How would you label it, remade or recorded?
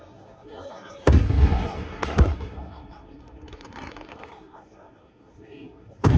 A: remade